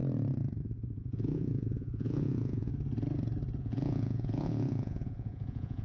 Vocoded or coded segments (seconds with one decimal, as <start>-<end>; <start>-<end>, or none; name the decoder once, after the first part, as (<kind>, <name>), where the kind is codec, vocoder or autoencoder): 0.6-2.7 (vocoder, Vocos); 3.6-5.8